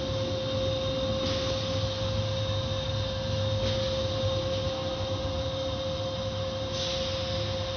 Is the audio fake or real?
real